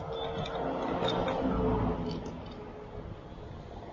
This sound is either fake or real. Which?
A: real